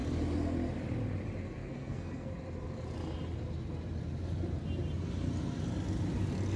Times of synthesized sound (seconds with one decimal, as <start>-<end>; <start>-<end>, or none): 1.6-2.3